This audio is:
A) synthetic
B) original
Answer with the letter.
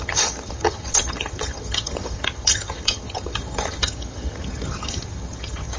A